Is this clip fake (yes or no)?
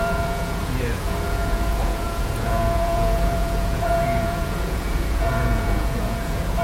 yes